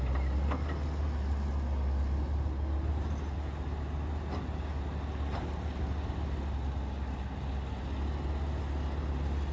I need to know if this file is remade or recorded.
recorded